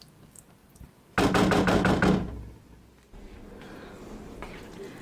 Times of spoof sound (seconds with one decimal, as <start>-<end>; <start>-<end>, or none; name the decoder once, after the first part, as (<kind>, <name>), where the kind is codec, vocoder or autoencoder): none